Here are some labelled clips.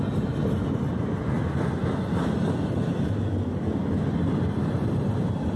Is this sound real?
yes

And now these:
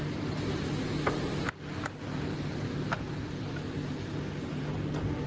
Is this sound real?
yes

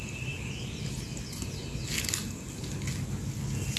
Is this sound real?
yes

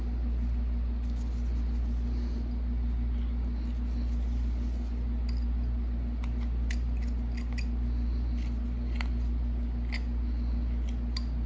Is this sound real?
yes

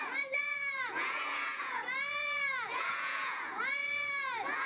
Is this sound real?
no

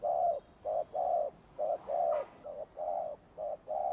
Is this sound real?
yes